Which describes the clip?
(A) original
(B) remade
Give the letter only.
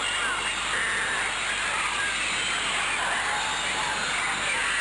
A